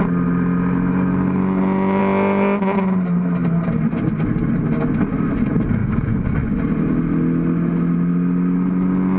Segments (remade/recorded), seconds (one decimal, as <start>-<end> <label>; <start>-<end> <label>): 0.0-5.8 recorded; 5.8-6.6 remade; 6.6-9.2 recorded